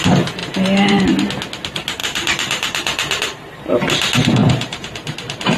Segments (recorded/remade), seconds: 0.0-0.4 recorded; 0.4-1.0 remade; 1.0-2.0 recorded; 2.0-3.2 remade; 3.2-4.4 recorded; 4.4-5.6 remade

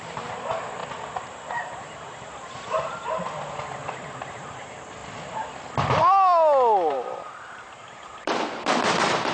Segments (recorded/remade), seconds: 0.0-0.8 remade; 0.8-1.3 recorded; 1.3-5.0 remade; 5.0-6.9 recorded; 6.9-9.3 remade

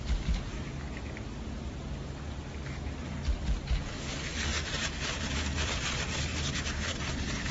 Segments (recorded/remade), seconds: 0.0-0.7 remade; 0.7-5.2 recorded; 5.2-7.5 remade

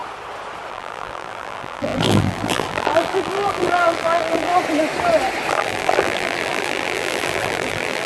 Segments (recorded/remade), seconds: 0.0-0.7 recorded; 0.7-4.5 remade; 4.5-5.5 recorded; 5.5-8.1 remade

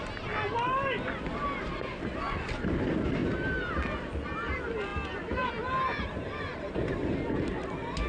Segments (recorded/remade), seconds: 0.0-3.2 recorded; 3.2-3.7 remade; 3.7-8.1 recorded

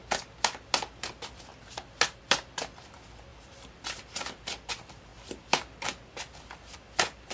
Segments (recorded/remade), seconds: 0.0-3.3 recorded; 3.3-4.0 remade; 4.0-7.3 recorded

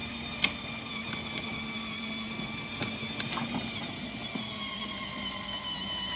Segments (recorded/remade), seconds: 0.0-6.2 recorded